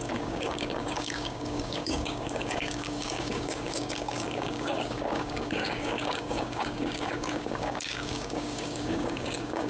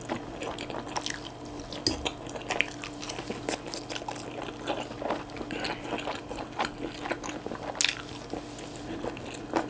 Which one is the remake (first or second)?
first